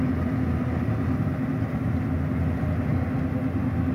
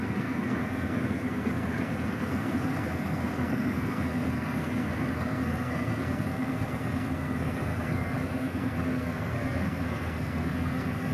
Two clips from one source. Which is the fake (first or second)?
second